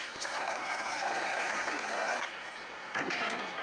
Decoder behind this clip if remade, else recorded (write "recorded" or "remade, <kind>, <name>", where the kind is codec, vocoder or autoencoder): remade, codec, SNAC